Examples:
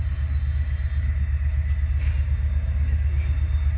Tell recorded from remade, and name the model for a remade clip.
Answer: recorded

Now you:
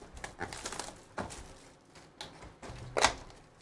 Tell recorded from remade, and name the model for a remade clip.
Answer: recorded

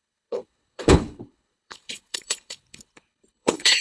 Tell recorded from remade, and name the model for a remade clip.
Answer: remade, codec, HILCodec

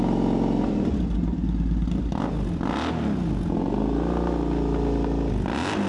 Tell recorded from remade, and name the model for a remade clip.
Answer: recorded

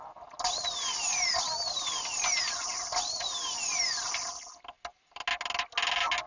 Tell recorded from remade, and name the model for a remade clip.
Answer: recorded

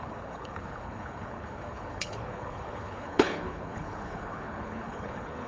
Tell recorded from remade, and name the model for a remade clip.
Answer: remade, codec, HILCodec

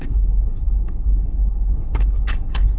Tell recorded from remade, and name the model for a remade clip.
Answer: remade, codec, HILCodec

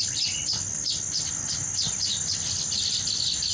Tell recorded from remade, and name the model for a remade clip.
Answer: recorded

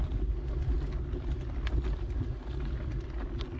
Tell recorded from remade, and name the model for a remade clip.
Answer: recorded